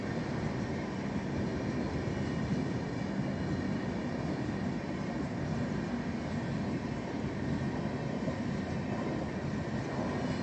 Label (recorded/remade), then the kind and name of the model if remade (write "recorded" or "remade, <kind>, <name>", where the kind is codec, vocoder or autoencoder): recorded